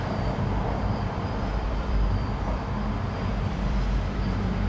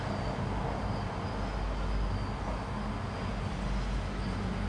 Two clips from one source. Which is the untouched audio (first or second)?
second